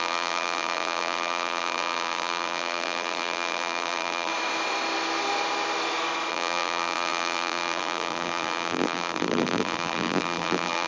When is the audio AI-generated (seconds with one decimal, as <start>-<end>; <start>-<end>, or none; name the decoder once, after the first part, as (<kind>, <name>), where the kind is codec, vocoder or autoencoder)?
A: 0.0-4.3 (vocoder, BigVGAN v2); 6.3-10.9